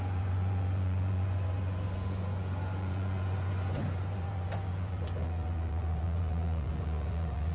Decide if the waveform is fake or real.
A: fake